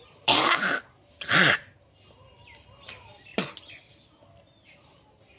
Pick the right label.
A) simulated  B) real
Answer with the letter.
B